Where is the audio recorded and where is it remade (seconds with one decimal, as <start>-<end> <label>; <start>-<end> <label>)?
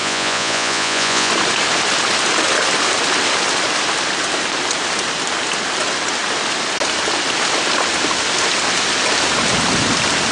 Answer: 0.0-1.3 remade; 1.3-10.3 recorded